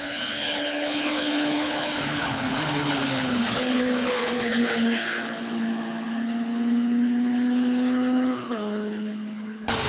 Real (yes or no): no